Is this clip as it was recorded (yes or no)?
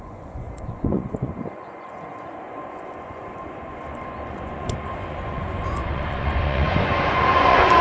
no